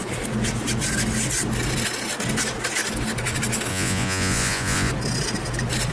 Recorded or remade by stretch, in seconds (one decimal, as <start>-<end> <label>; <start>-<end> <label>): 0.0-3.7 recorded; 3.7-4.9 remade; 4.9-5.9 recorded